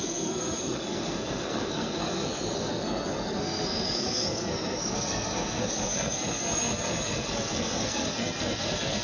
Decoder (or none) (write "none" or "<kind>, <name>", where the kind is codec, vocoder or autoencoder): codec, SNAC